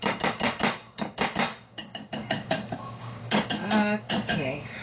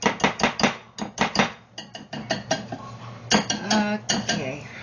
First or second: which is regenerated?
first